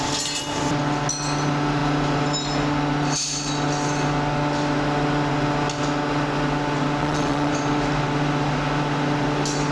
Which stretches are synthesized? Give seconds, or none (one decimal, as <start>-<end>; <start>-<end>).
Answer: 7.0-7.5